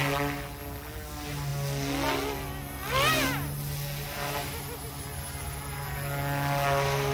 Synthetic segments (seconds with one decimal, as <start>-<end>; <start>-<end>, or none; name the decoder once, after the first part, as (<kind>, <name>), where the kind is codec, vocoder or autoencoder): none